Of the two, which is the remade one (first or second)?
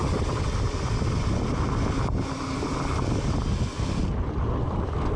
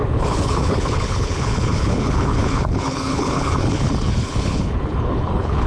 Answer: second